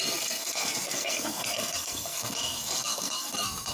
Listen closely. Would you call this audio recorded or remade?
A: remade